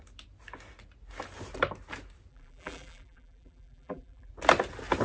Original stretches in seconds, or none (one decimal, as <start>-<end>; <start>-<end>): 0.0-2.3; 4.3-5.0